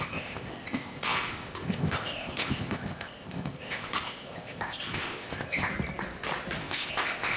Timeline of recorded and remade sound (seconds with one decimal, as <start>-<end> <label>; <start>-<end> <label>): 0.0-5.7 remade; 5.7-6.6 recorded; 6.6-7.4 remade